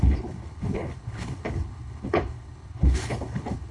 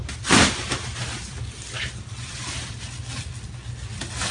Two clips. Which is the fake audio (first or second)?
first